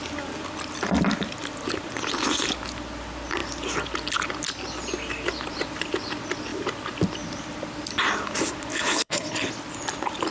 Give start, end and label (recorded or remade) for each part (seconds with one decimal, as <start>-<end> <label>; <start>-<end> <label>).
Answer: 0.0-8.7 recorded; 8.7-9.5 remade; 9.5-10.3 recorded